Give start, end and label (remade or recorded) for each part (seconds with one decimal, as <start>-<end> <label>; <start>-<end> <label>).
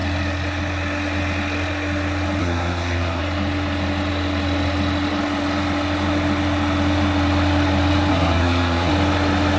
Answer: 0.0-2.4 recorded; 2.4-3.2 remade; 3.2-8.1 recorded; 8.1-8.9 remade; 8.9-9.6 recorded